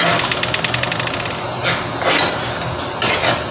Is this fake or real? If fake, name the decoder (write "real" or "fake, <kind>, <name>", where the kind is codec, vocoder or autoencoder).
real